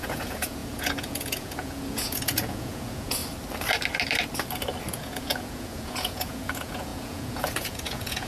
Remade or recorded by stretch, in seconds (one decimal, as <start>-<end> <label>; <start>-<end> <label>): 0.0-3.2 remade; 3.2-4.9 recorded; 4.9-8.3 remade